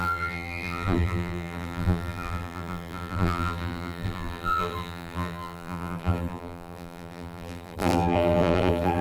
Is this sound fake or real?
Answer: fake